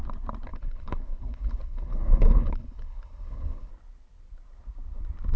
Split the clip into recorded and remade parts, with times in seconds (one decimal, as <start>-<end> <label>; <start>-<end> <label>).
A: 0.0-0.5 recorded; 0.5-3.7 remade; 3.7-5.4 recorded